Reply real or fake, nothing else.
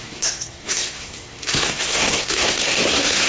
fake